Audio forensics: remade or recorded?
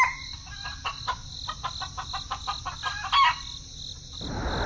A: recorded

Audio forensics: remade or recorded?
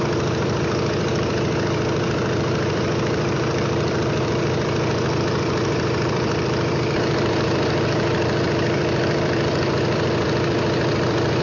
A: remade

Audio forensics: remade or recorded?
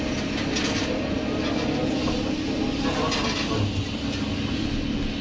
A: recorded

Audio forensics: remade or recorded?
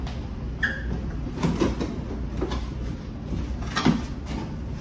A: recorded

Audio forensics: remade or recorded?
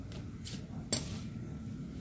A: recorded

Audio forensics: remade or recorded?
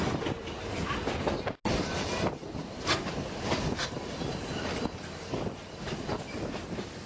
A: recorded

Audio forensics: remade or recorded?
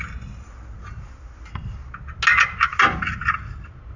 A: recorded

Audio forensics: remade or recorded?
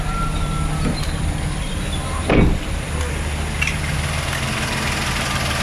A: recorded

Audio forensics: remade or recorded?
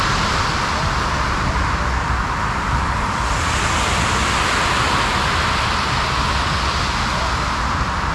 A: recorded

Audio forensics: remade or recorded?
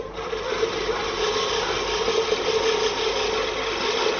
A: recorded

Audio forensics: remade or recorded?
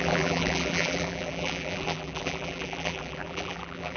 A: remade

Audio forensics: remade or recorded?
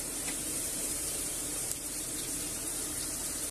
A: remade